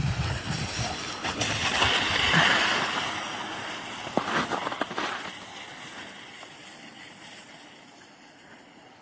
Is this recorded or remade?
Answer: recorded